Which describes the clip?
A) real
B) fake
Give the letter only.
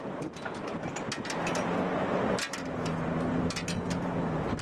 A